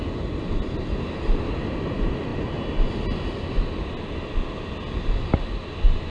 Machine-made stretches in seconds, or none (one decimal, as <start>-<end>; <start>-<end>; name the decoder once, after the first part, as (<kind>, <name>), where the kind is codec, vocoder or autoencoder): none